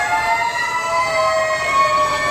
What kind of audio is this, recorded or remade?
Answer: remade